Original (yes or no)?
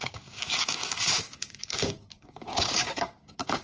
no